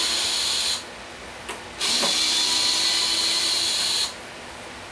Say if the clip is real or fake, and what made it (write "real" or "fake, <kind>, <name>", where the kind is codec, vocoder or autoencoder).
real